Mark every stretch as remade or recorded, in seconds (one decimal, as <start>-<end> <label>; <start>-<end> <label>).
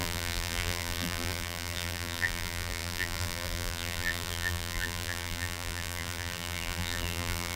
0.0-7.6 remade